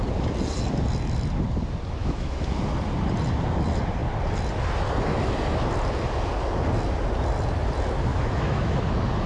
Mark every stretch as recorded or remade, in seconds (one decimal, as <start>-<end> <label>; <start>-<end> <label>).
0.0-2.0 recorded; 2.0-2.6 remade; 2.6-8.1 recorded; 8.1-8.8 remade; 8.8-9.3 recorded